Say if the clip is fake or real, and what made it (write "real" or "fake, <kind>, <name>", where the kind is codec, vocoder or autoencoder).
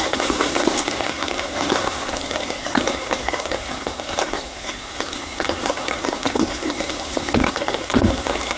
fake, codec, SNAC